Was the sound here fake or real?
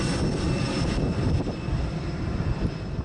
real